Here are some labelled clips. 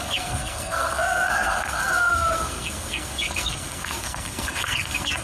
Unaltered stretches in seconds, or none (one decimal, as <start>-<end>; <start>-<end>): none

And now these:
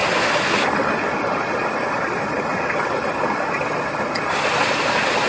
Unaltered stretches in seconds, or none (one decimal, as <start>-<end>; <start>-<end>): 0.0-5.3

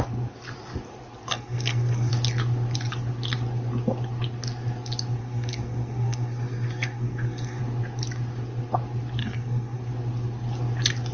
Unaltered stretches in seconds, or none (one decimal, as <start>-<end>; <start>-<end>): 0.0-1.3; 2.1-5.2; 7.6-9.2; 9.8-11.1

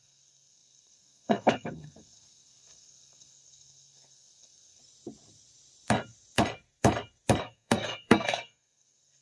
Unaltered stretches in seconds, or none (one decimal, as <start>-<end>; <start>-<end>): 4.8-7.4

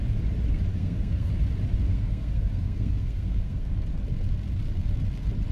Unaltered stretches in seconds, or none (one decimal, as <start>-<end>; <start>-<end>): 0.0-0.7; 1.3-1.9; 3.7-5.5

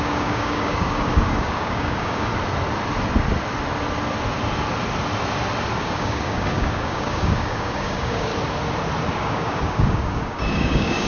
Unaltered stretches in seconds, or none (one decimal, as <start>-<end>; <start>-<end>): 2.3-5.8; 8.3-9.1

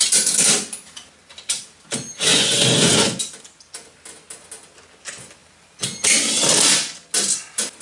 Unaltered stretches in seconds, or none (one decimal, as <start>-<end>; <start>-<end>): 0.0-2.3; 3.2-7.8